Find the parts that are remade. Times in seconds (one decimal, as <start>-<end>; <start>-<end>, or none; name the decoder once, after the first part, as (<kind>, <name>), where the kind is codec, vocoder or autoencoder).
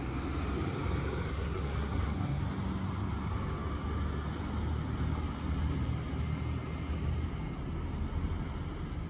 1.3-2.4 (codec, SNAC)